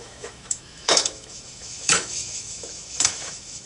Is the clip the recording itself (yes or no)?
no